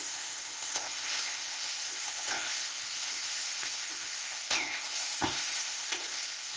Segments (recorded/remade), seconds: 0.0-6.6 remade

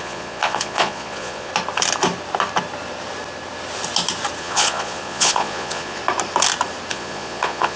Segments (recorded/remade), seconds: 0.0-1.5 remade; 1.5-4.4 recorded; 4.4-6.0 remade; 6.0-6.9 recorded; 6.9-7.8 remade

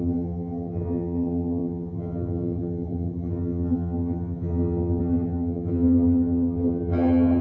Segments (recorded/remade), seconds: 0.0-7.4 remade

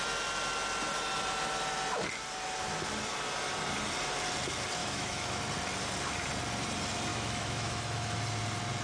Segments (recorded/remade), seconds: 0.0-4.8 recorded; 4.8-5.4 remade; 5.4-7.1 recorded; 7.1-8.2 remade; 8.2-8.8 recorded

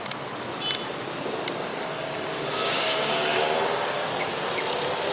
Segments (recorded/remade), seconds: 0.0-1.7 recorded; 1.7-4.0 remade; 4.0-5.1 recorded

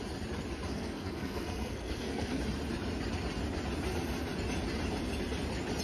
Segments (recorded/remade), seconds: 0.0-0.7 recorded; 0.7-2.4 remade; 2.4-5.8 recorded